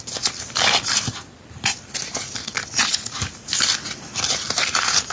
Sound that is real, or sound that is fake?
real